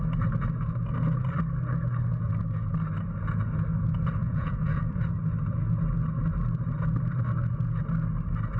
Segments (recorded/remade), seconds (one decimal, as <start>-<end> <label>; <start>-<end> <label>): 0.0-4.2 recorded; 4.2-5.0 remade; 5.0-8.6 recorded